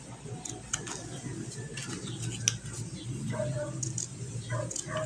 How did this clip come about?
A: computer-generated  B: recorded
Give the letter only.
B